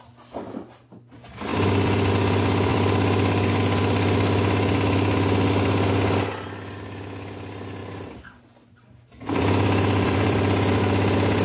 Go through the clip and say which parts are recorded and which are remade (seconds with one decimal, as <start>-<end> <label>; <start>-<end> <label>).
0.0-1.5 recorded; 1.5-2.1 remade; 2.1-2.7 recorded; 2.7-3.6 remade; 3.6-7.8 recorded; 7.8-10.8 remade; 10.8-11.4 recorded